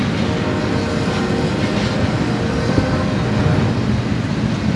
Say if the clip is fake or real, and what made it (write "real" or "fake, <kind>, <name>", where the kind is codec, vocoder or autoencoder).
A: real